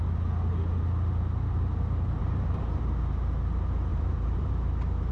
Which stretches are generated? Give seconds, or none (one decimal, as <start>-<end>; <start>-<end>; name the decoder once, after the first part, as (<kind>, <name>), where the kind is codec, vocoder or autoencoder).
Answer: 2.2-2.8 (vocoder, BigVGAN v2); 3.9-4.5